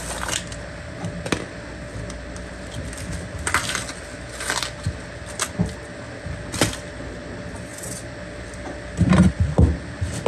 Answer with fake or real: real